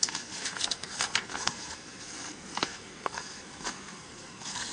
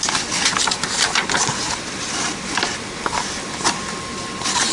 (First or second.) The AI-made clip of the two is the first